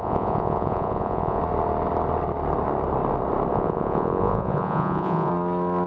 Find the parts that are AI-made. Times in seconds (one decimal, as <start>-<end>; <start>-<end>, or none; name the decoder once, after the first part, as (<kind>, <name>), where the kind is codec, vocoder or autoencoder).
0.0-1.4 (vocoder, Vocos); 3.5-5.3